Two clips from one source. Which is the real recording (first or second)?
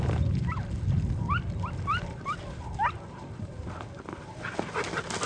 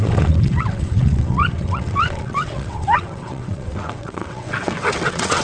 first